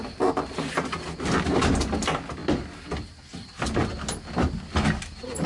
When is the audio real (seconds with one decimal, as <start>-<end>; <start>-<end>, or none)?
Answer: 0.0-5.5

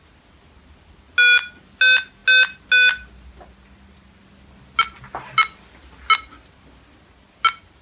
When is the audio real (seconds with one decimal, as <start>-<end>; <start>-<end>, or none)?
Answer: 0.0-7.8

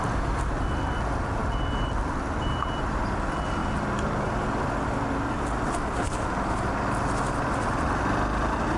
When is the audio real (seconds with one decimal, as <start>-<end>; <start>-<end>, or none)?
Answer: 0.0-8.8

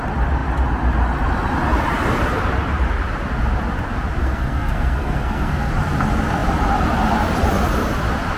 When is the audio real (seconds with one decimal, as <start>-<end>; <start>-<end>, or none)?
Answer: 0.0-4.2; 5.7-8.4

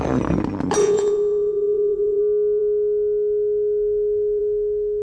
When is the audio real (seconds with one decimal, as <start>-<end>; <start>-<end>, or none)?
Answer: 0.0-0.8; 2.2-5.0